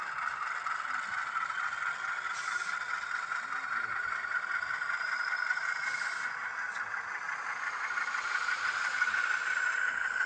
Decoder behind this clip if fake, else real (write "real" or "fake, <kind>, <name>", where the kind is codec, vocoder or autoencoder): real